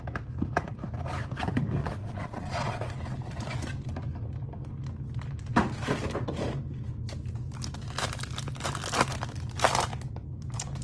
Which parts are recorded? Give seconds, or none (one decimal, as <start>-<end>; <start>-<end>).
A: 0.0-1.8; 2.9-10.8